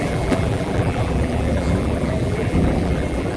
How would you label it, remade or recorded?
remade